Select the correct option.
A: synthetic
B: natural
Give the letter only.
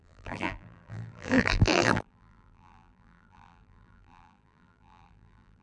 A